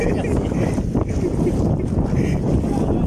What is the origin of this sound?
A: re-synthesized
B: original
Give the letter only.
B